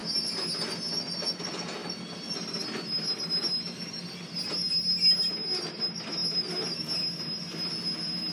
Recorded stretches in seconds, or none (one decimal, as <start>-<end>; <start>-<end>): 0.0-8.3